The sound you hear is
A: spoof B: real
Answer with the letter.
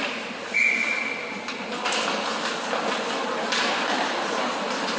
B